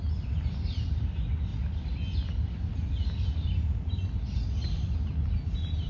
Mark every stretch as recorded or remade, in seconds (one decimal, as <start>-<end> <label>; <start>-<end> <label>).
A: 0.0-5.9 recorded